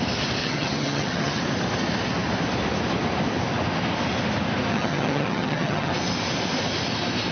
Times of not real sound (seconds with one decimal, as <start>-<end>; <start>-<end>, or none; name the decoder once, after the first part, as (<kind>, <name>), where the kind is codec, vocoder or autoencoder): 0.4-1.4 (vocoder, HiFi-GAN); 4.7-5.9